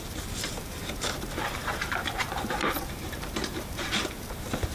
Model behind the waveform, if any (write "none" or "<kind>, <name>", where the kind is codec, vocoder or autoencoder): vocoder, BigVGAN v2